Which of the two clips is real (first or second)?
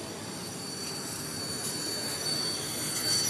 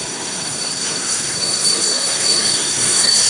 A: first